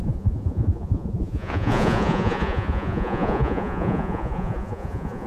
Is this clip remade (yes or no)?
yes